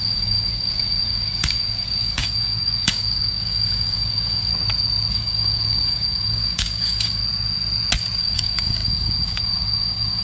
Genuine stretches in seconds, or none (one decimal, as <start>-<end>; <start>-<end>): 4.5-5.1; 7.2-8.2